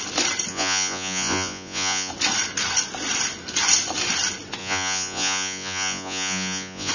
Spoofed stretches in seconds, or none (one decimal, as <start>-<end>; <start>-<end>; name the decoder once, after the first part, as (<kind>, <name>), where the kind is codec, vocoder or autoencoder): 0.5-2.1 (vocoder, Vocos); 4.6-6.9